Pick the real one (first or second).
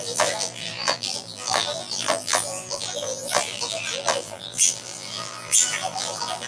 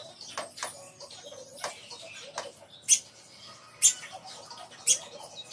second